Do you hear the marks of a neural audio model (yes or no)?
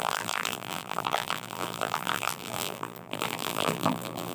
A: yes